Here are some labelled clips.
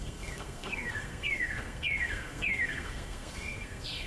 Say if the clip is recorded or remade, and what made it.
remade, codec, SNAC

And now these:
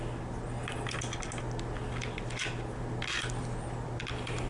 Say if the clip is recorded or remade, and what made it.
recorded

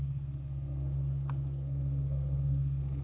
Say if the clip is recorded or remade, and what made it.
remade, codec, SNAC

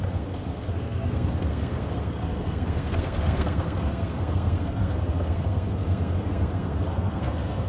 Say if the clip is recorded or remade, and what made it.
remade, codec, SNAC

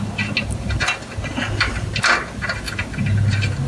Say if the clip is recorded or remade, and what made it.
recorded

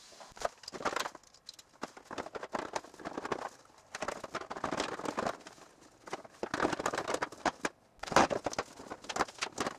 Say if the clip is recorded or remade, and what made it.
recorded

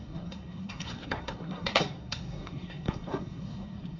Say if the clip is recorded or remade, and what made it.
remade, codec, SNAC